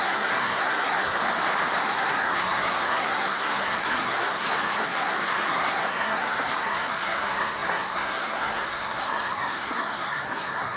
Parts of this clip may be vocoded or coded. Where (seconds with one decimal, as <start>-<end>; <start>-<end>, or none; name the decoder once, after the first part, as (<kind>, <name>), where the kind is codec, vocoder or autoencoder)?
0.0-1.2 (codec, SNAC); 1.8-10.8

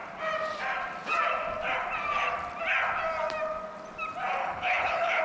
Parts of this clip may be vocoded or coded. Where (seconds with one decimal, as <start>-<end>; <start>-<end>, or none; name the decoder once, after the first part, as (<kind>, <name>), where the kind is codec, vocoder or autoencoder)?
4.4-5.2 (codec, HILCodec)

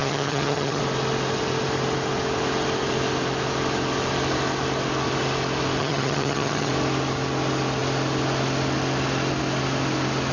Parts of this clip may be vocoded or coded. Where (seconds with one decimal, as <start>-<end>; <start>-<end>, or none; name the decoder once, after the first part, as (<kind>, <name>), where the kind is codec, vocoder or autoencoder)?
0.0-0.8 (vocoder, HiFi-GAN); 5.8-6.7